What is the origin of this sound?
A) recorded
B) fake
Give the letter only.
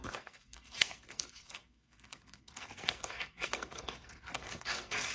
B